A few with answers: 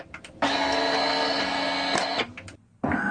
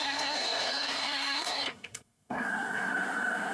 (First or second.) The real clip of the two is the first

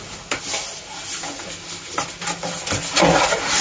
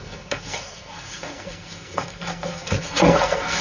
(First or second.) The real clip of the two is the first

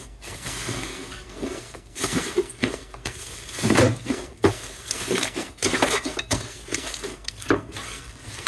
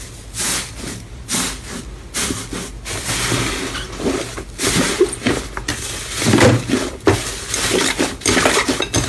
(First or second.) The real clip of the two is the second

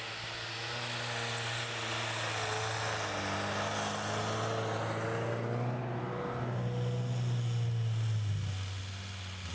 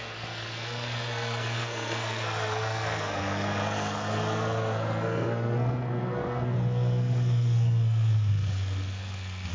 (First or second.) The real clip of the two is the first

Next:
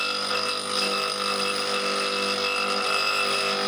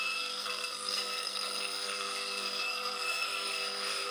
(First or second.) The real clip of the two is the first